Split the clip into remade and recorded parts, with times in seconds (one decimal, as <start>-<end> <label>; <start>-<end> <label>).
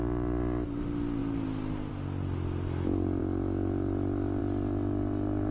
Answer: 0.0-5.5 recorded